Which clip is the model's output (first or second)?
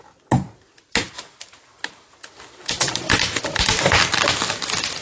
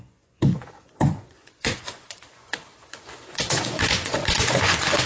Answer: second